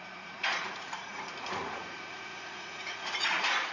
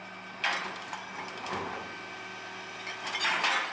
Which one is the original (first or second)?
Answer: second